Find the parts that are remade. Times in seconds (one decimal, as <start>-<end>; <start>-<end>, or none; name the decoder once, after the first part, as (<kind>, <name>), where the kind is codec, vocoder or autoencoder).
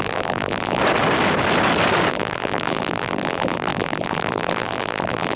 0.0-0.8 (vocoder, BigVGAN v2); 2.1-5.4